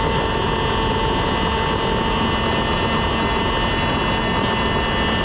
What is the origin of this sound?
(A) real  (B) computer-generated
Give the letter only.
A